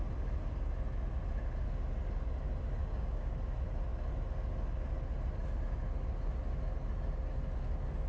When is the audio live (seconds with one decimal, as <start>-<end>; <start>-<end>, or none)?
0.0-2.8; 3.3-8.1